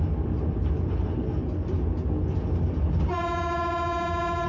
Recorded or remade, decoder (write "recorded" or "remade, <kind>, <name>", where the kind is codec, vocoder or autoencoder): recorded